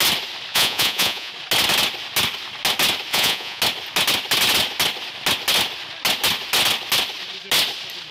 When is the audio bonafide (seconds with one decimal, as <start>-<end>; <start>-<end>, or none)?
0.0-0.5; 1.3-3.1; 3.6-8.1